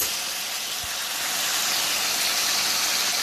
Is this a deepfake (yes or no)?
no